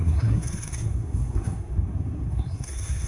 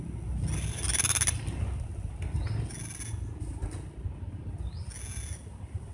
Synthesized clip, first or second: first